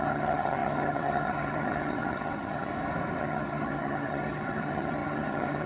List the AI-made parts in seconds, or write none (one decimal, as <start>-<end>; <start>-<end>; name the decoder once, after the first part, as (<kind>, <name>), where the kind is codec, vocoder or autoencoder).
0.0-2.7 (vocoder, HiFi-GAN); 3.2-5.7